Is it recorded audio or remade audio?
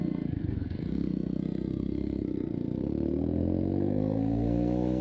remade